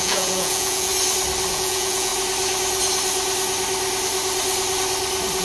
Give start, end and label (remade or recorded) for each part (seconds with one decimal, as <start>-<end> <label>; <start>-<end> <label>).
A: 0.0-0.9 remade; 0.9-1.5 recorded; 1.5-2.1 remade; 2.1-5.4 recorded